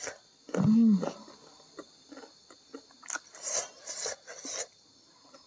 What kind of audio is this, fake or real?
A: real